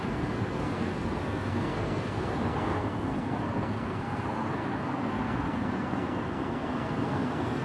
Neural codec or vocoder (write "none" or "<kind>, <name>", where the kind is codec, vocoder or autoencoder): codec, SNAC